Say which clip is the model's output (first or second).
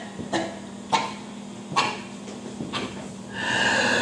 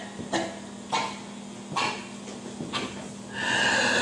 first